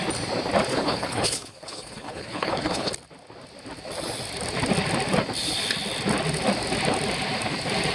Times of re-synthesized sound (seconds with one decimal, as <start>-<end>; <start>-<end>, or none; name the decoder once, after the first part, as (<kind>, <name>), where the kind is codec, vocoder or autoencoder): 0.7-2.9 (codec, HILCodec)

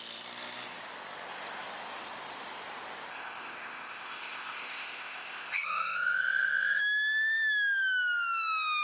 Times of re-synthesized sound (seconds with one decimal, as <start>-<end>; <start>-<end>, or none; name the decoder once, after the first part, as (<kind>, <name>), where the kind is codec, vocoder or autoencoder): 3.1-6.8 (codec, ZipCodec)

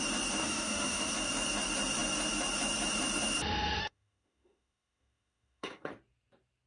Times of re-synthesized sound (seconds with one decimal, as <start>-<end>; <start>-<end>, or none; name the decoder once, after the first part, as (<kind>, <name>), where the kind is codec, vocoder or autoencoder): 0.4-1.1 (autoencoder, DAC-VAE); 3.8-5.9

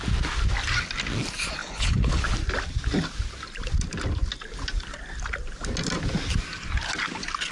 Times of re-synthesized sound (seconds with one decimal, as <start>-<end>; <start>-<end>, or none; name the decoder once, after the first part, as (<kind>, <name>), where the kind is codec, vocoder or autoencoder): 1.6-2.2 (codec, HILCodec)

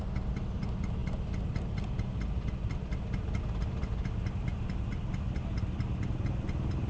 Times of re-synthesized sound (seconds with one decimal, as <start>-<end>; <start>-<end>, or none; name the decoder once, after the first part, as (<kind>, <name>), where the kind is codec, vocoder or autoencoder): none

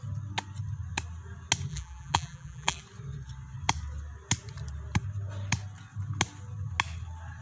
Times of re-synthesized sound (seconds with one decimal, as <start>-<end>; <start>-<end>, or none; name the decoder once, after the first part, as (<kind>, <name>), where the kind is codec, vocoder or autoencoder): 1.7-2.8 (vocoder, BigVGAN v2)

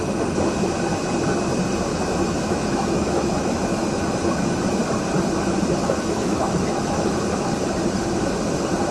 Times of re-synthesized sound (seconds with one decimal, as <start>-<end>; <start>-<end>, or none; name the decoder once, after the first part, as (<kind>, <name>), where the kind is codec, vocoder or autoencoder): 1.9-3.6 (autoencoder, DAC-VAE); 5.8-7.2

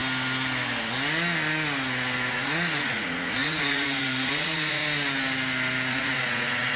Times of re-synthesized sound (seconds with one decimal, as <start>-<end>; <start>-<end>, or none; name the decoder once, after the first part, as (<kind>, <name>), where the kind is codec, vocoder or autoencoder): 2.3-4.8 (vocoder, Vocos); 5.9-6.8